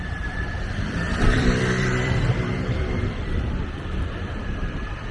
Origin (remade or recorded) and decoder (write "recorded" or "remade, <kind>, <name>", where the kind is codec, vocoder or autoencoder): remade, vocoder, BigVGAN v2